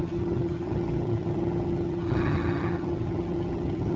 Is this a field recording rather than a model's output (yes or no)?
no